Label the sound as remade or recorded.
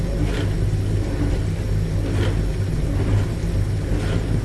recorded